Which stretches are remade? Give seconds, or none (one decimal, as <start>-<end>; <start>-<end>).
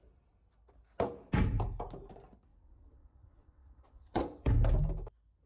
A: 2.5-4.5